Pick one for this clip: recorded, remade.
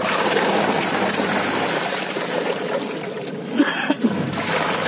remade